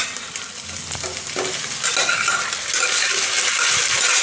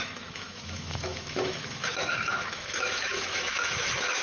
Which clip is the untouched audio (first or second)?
first